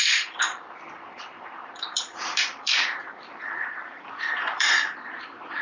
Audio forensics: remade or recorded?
remade